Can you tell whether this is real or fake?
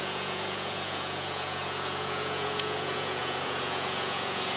fake